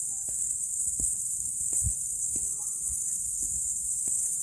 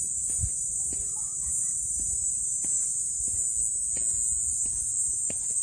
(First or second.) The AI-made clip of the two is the first